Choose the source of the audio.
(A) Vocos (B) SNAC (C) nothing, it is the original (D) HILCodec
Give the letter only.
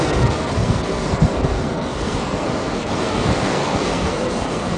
B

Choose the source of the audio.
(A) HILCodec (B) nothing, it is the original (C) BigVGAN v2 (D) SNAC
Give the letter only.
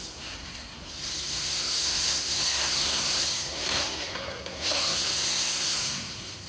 D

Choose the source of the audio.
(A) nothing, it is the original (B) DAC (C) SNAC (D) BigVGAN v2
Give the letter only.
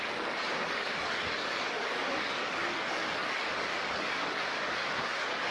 B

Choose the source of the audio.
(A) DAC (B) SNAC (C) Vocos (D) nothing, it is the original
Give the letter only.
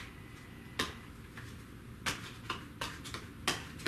D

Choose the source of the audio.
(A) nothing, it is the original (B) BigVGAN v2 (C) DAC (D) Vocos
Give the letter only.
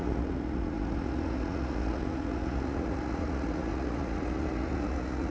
D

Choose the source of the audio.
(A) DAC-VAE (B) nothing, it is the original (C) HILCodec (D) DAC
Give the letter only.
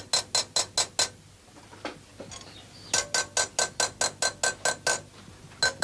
B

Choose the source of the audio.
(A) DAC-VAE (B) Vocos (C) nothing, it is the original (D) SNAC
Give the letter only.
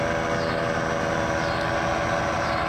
C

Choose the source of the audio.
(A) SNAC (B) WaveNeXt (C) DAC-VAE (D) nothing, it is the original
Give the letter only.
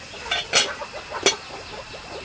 D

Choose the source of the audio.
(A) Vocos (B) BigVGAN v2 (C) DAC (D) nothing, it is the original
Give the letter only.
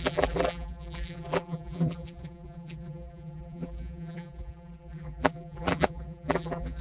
B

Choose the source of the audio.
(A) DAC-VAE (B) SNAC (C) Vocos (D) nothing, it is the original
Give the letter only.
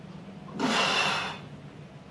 D